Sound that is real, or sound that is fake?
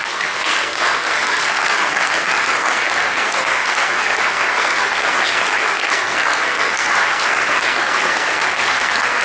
fake